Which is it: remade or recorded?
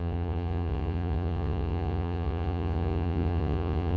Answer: remade